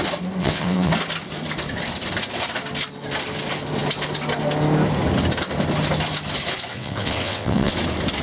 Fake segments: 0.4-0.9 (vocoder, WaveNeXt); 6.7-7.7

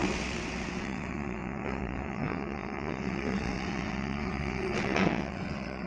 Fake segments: 0.0-5.9 (vocoder, WaveNeXt)

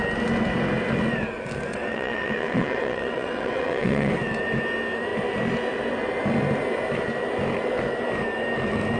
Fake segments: 1.7-4.1 (vocoder, WaveNeXt)

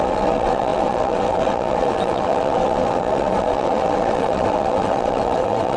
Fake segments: 0.0-5.8 (vocoder, WaveNeXt)

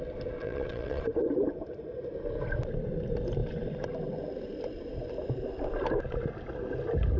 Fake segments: 0.4-1.1 (vocoder, WaveNeXt)

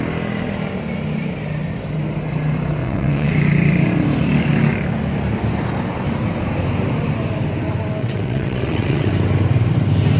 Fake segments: 2.8-3.3 (vocoder, WaveNeXt); 8.0-9.1

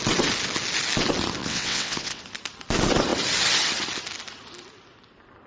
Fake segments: 1.4-2.2 (vocoder, WaveNeXt)

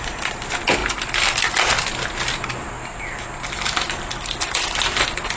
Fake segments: none